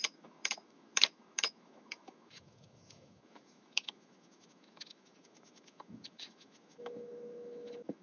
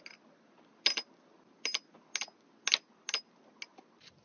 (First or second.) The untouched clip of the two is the second